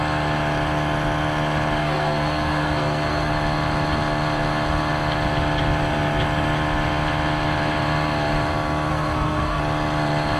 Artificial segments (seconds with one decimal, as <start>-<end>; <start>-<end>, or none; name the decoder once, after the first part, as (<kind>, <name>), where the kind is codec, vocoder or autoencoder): 1.8-3.3 (codec, SNAC); 8.9-9.6